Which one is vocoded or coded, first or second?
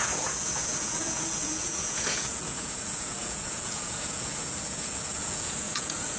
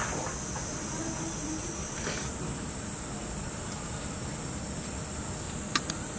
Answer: first